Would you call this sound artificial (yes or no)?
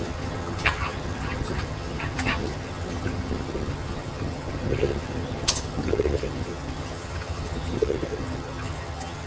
yes